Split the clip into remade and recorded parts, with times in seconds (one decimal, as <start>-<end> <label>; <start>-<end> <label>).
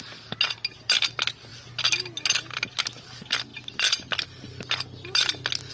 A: 0.0-5.7 recorded